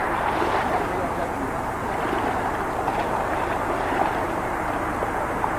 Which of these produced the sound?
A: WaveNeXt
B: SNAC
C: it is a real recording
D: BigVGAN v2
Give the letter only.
D